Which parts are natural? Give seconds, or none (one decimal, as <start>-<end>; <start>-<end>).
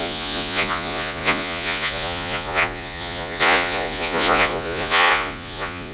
none